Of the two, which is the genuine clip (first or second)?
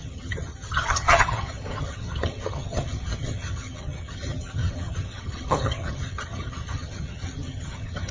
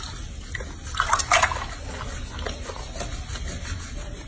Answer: second